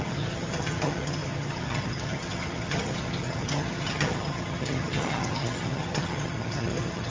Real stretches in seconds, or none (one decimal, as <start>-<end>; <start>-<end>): none